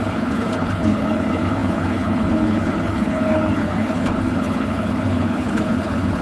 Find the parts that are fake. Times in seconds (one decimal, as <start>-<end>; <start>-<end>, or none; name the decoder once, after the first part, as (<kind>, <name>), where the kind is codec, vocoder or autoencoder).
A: 0.0-6.2 (codec, HILCodec)